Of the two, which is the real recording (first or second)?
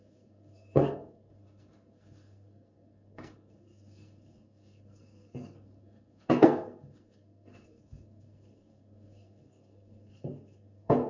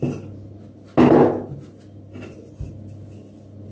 second